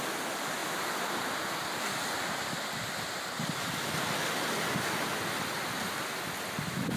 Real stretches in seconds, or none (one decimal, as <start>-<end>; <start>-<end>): 0.0-7.0